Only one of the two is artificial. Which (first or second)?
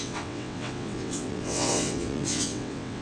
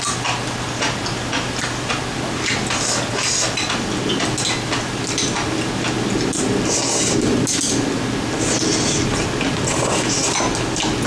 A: first